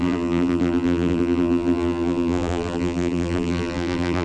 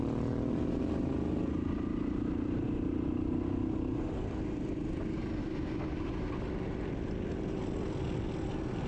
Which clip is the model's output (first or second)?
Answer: first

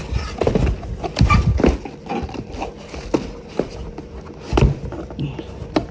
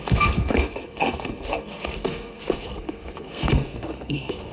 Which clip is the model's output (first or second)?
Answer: second